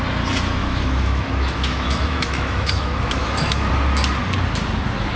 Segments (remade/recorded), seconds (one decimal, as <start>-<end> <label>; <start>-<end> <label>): 0.0-0.6 recorded; 0.6-3.7 remade; 3.7-5.2 recorded